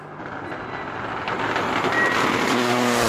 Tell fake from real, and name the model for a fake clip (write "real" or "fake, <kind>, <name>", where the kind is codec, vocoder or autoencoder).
real